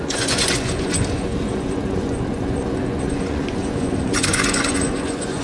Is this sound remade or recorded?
remade